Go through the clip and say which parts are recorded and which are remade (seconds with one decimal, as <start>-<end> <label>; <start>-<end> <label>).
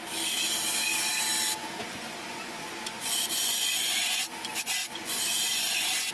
0.0-1.6 recorded; 1.6-4.2 remade; 4.2-4.8 recorded; 4.8-6.1 remade